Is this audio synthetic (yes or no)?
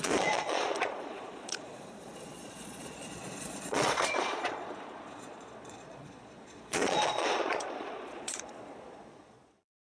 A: yes